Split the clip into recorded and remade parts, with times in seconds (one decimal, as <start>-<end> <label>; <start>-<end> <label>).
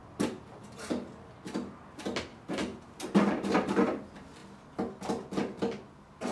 0.0-2.3 recorded; 2.3-4.0 remade; 4.0-6.3 recorded